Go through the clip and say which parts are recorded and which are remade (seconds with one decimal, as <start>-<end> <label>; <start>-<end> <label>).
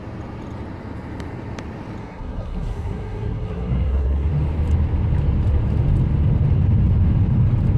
0.0-2.0 recorded; 2.0-4.3 remade; 4.3-7.8 recorded